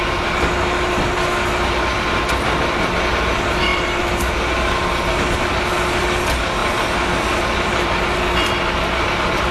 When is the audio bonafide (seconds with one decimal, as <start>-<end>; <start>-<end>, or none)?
0.0-3.7; 4.3-9.5